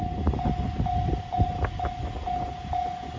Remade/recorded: recorded